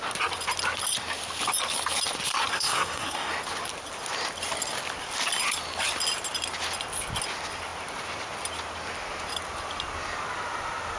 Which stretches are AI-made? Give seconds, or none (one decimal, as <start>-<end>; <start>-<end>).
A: 2.5-3.3